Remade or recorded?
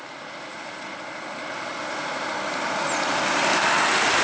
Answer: recorded